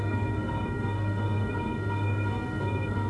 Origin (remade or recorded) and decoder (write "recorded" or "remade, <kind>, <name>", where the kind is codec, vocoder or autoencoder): remade, codec, SNAC